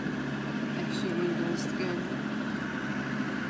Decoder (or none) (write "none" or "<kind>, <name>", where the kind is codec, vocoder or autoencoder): none